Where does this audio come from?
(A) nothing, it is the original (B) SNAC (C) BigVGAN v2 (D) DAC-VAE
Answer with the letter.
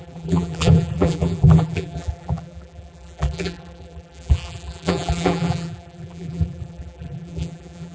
C